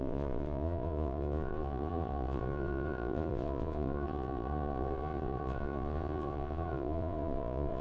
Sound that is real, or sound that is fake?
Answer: fake